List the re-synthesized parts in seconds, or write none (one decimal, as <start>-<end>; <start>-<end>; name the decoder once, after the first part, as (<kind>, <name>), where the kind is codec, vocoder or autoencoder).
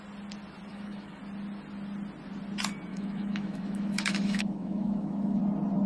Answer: 0.7-1.2 (autoencoder, DAC-VAE); 2.9-5.4